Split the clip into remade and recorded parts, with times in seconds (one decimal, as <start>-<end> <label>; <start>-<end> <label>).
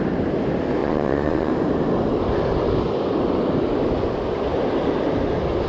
0.0-0.8 recorded; 0.8-1.5 remade; 1.5-5.7 recorded